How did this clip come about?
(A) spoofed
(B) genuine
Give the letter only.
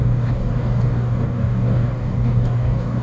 A